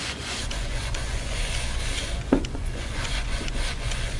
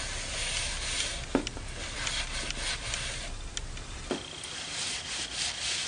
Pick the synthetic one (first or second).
first